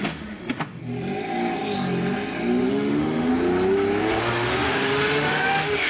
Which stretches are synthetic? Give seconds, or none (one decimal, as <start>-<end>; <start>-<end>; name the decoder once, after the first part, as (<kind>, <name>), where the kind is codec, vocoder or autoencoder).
0.0-0.8 (autoencoder, DAC-VAE); 2.7-3.3; 4.1-5.9